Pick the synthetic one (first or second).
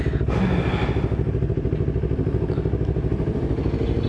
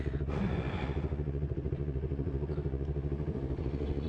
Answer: second